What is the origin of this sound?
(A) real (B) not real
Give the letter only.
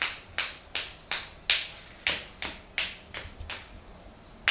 A